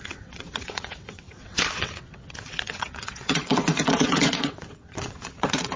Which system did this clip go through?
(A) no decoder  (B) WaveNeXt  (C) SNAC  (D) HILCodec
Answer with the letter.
B